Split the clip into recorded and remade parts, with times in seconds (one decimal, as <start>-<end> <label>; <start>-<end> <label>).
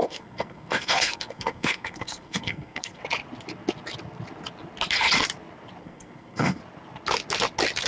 0.0-3.0 remade; 3.0-5.8 recorded; 5.8-6.6 remade; 6.6-7.9 recorded